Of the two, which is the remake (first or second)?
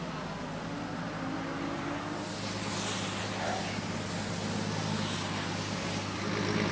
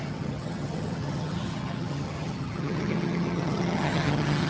second